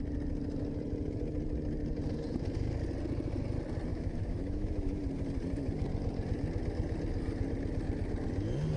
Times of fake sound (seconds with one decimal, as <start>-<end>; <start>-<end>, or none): 3.9-5.0